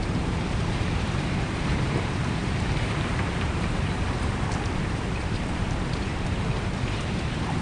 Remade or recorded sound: remade